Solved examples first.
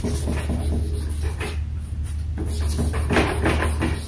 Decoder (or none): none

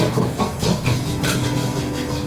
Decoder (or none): codec, SNAC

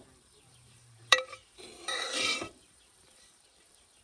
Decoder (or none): vocoder, BigVGAN v2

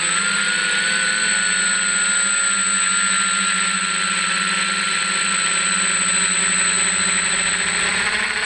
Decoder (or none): none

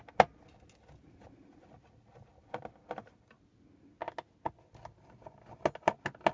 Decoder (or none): none